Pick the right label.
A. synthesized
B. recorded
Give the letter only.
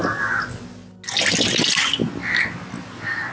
B